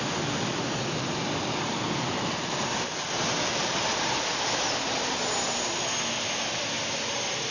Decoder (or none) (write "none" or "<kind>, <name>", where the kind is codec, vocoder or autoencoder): none